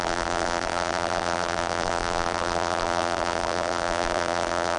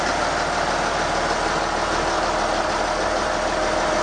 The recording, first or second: second